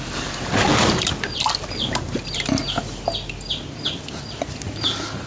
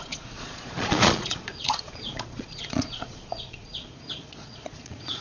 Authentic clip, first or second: first